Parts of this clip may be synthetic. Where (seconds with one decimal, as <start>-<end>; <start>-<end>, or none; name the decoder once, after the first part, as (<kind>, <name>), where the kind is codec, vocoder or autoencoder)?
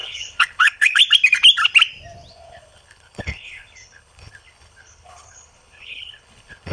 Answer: 0.0-1.0 (codec, HILCodec); 2.3-6.7